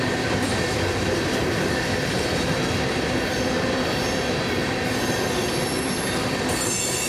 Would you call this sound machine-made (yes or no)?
yes